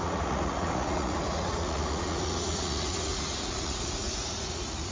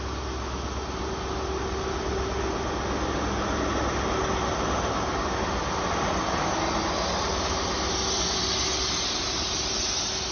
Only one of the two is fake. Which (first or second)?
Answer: first